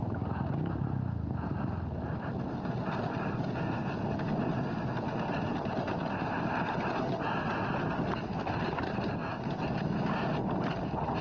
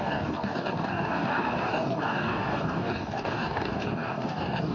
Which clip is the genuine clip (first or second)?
first